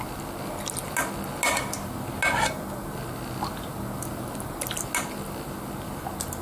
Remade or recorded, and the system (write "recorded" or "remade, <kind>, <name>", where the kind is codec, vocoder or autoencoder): recorded